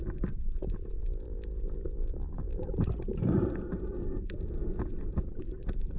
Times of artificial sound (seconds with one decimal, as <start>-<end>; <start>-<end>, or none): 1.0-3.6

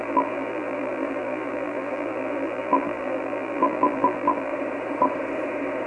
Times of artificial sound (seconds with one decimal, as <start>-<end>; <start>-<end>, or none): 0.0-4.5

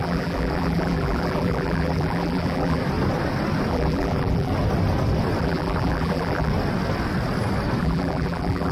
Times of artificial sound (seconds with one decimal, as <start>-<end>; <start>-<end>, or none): 0.0-2.8; 3.7-4.5; 5.4-6.5; 7.8-8.7

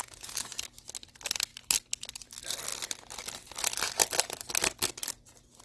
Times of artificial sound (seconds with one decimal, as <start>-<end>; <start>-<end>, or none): none

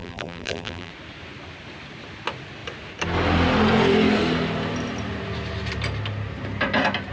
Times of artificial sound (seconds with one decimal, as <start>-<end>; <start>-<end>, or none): 0.0-0.9

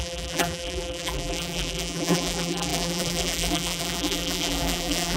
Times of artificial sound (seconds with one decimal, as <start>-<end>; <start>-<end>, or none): 0.0-5.2

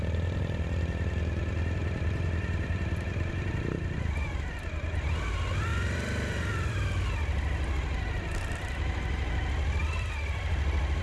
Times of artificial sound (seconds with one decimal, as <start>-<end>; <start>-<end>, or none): 1.8-3.3; 5.7-6.9; 9.8-11.0

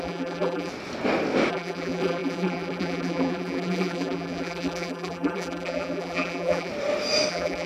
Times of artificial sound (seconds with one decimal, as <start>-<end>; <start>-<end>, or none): 0.0-0.7; 1.5-6.7; 7.3-7.7